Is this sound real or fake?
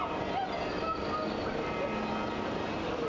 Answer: real